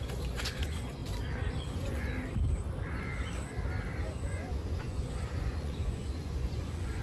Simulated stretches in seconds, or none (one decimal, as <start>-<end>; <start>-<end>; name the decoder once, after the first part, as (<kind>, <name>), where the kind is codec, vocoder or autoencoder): 0.0-1.0 (vocoder, Vocos); 1.6-2.1; 4.1-7.0